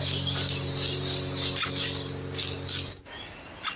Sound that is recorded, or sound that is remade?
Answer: recorded